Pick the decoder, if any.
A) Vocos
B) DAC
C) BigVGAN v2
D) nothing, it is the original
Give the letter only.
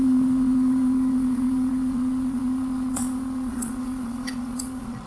A